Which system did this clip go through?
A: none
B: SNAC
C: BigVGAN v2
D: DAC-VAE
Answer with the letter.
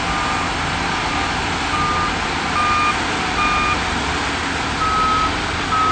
A